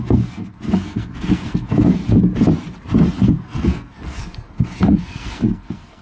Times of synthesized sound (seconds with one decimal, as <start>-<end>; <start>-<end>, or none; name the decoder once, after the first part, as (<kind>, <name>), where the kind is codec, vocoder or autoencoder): 0.0-2.0 (codec, SNAC); 3.2-6.0